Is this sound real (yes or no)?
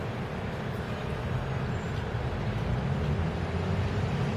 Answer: yes